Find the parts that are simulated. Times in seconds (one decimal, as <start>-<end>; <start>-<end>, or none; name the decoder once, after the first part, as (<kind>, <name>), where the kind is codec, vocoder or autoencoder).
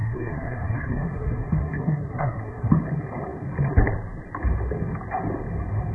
0.0-2.7 (codec, SNAC)